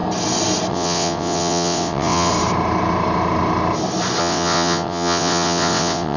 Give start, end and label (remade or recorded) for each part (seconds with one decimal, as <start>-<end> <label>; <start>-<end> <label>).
0.0-0.7 recorded; 0.7-2.3 remade; 2.3-4.2 recorded; 4.2-6.2 remade

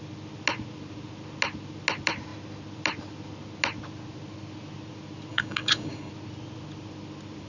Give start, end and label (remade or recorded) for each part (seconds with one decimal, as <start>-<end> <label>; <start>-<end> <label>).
0.0-5.3 recorded; 5.3-6.1 remade; 6.1-7.5 recorded

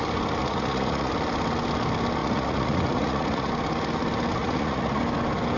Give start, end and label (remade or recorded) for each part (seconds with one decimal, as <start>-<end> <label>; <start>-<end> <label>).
0.0-0.4 recorded; 0.4-1.1 remade; 1.1-2.2 recorded; 2.2-3.5 remade; 3.5-4.4 recorded; 4.4-5.0 remade; 5.0-5.6 recorded

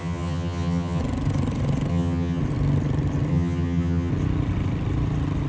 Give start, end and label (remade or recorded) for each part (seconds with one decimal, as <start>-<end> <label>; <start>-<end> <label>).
0.0-1.0 remade; 1.0-1.9 recorded; 1.9-2.4 remade; 2.4-3.3 recorded; 3.3-4.1 remade; 4.1-5.5 recorded

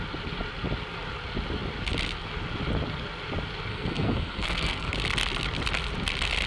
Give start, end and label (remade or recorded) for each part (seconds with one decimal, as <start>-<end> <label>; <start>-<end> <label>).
0.0-3.7 recorded; 3.7-4.9 remade; 4.9-6.5 recorded

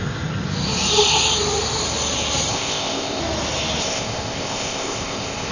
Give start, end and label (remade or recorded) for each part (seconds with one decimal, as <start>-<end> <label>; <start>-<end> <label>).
0.0-2.5 recorded; 2.5-3.2 remade; 3.2-3.8 recorded; 3.8-5.5 remade

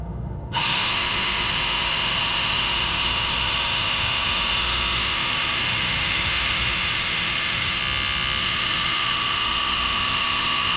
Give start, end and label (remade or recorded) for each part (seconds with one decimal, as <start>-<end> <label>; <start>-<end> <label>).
0.0-7.8 remade; 7.8-8.4 recorded; 8.4-10.8 remade